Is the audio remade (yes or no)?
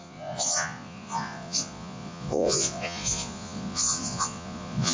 yes